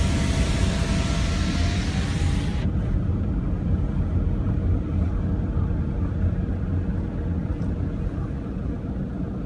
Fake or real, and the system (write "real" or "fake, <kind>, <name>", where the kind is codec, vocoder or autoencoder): real